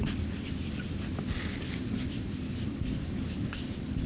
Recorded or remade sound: recorded